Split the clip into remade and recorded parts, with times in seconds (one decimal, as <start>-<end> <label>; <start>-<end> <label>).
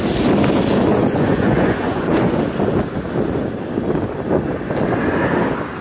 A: 0.0-0.9 recorded; 0.9-2.4 remade; 2.4-5.8 recorded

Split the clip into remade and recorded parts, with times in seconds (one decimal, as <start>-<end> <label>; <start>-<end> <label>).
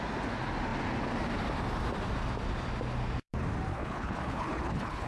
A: 0.0-3.7 recorded; 3.7-5.1 remade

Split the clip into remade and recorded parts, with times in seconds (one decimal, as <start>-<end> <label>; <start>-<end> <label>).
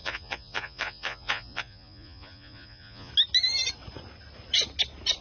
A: 0.0-3.1 remade; 3.1-5.2 recorded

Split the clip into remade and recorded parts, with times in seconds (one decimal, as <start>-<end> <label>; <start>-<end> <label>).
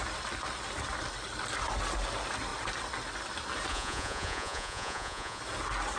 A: 0.0-3.7 recorded; 3.7-5.4 remade; 5.4-6.0 recorded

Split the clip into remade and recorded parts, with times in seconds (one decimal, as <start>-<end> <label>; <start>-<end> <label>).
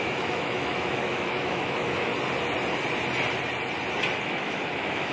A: 0.0-2.1 remade; 2.1-4.2 recorded; 4.2-5.1 remade